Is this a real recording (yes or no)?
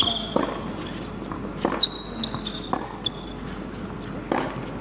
yes